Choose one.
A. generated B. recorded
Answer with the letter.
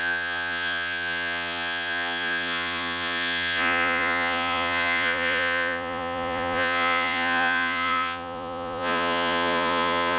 A